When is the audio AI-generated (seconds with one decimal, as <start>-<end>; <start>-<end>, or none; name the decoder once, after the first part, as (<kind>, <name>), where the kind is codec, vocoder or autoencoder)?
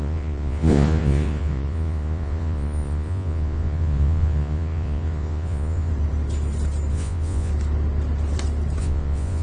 0.0-5.9 (vocoder, Vocos); 6.9-7.5; 8.8-9.4